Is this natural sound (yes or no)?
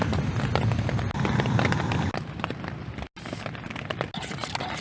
yes